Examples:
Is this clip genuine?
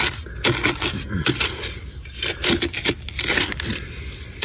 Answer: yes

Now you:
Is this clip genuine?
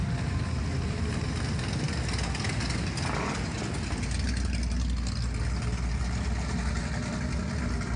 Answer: yes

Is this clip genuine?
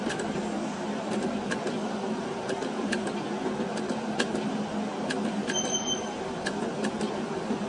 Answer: yes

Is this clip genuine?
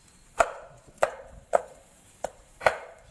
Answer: no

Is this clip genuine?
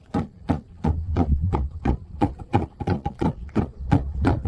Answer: no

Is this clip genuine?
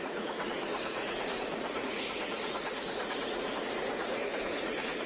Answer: no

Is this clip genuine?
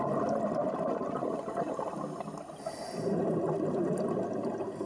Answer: yes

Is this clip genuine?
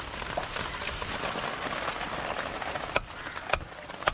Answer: yes